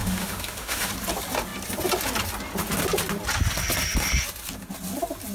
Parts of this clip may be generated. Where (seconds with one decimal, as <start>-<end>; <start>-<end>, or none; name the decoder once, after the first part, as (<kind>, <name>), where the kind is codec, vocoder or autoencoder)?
0.0-0.9 (autoencoder, DAC-VAE)